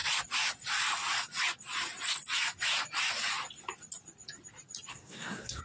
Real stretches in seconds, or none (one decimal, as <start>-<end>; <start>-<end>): 0.0-4.9